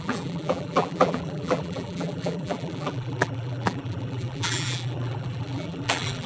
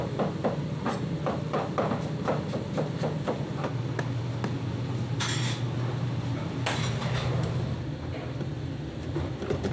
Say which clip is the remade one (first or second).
first